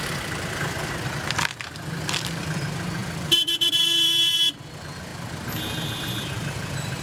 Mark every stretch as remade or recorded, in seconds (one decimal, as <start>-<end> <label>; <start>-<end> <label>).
0.0-0.8 remade; 0.8-2.4 recorded; 2.4-5.1 remade; 5.1-6.0 recorded; 6.0-7.0 remade